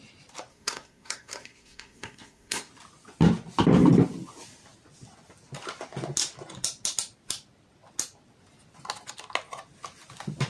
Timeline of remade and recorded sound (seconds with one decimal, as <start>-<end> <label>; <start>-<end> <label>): 0.0-0.5 recorded; 0.5-2.7 remade; 2.7-10.5 recorded